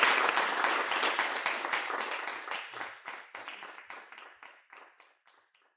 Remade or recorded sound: recorded